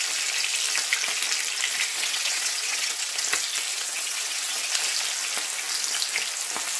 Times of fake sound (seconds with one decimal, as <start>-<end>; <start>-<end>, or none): 1.9-3.1; 3.7-4.7